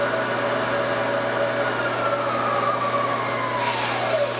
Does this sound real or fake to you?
real